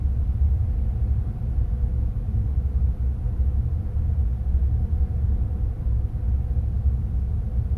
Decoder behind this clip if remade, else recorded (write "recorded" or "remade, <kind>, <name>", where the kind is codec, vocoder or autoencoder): recorded